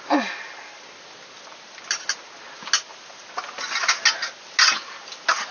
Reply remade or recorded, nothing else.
recorded